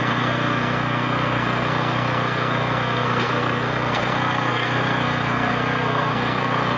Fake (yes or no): yes